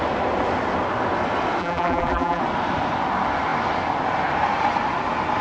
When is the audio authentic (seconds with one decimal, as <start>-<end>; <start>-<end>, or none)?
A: 0.0-1.6; 2.4-5.4